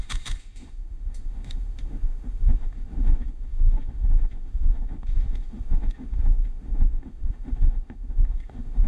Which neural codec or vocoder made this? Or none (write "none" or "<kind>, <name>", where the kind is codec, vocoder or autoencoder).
autoencoder, DAC-VAE